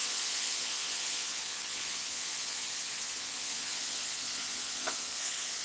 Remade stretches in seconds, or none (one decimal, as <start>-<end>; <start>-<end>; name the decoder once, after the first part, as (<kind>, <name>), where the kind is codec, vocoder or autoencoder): 0.0-5.6 (vocoder, Vocos)